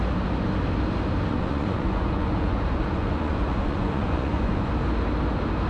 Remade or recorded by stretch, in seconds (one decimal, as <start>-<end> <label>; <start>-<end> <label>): 0.0-1.3 recorded; 1.3-4.7 remade; 4.7-5.7 recorded